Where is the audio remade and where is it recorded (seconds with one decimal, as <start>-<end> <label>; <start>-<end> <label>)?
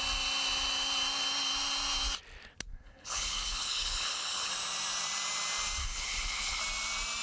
0.0-2.7 recorded; 2.7-4.5 remade; 4.5-5.8 recorded; 5.8-6.6 remade; 6.6-7.2 recorded